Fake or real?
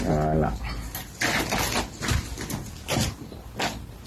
real